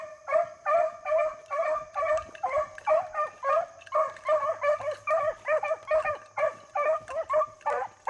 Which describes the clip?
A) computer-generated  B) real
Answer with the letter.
A